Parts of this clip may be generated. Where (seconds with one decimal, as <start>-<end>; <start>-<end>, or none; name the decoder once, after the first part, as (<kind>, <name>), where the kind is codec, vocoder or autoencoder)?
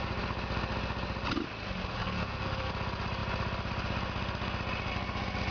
2.0-2.7 (codec, SNAC)